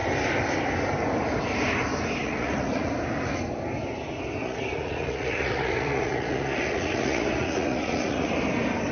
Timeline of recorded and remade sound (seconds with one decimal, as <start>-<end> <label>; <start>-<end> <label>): 0.0-2.2 recorded; 2.2-2.9 remade; 2.9-4.4 recorded; 4.4-8.3 remade; 8.3-8.9 recorded